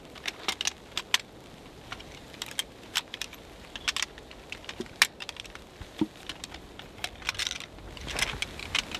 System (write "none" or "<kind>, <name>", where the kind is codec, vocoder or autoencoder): none